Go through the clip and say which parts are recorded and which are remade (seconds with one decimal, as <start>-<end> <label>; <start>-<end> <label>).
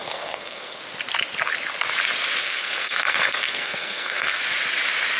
0.0-0.8 remade; 0.8-2.4 recorded; 2.4-4.4 remade; 4.4-5.2 recorded